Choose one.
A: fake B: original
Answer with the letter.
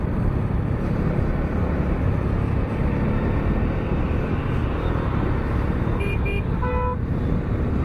B